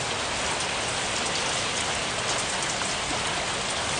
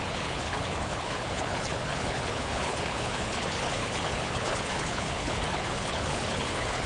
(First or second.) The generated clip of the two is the second